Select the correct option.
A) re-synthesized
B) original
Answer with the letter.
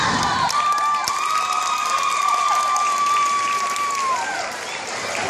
B